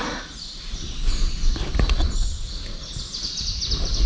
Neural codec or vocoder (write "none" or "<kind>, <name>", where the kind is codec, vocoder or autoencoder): none